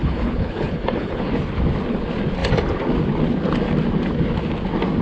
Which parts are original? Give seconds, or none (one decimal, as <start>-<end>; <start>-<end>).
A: 1.3-5.0